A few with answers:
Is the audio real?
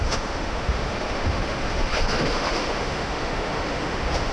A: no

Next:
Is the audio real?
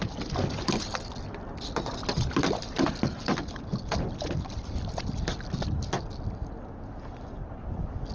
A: yes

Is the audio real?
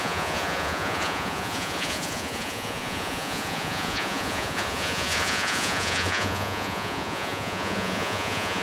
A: no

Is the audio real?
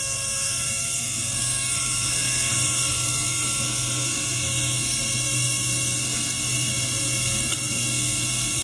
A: no